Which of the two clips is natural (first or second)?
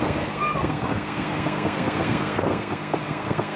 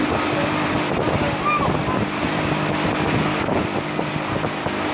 second